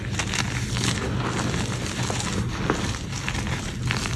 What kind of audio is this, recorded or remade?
recorded